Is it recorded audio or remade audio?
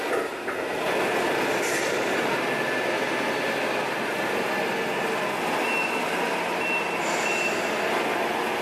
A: recorded